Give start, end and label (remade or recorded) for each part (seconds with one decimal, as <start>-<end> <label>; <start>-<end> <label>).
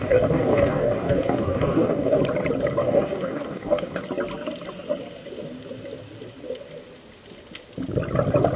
0.0-2.2 remade; 2.2-2.8 recorded; 2.8-4.0 remade; 4.0-8.6 recorded